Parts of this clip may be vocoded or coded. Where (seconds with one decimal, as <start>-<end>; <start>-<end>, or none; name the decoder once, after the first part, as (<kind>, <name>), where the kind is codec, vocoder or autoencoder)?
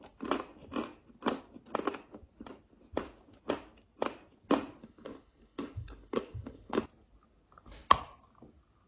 4.8-6.8 (codec, HILCodec)